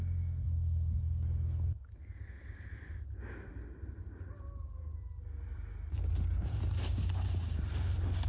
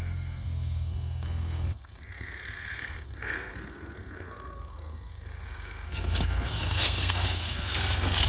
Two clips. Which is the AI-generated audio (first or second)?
second